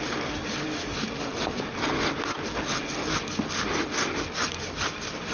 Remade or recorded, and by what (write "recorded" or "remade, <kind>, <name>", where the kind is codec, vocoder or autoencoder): recorded